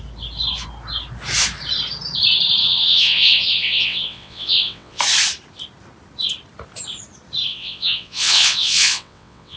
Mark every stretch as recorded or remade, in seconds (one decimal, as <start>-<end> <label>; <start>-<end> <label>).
0.0-2.6 recorded; 2.6-5.0 remade; 5.0-7.5 recorded; 7.5-9.6 remade